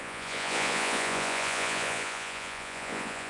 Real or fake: fake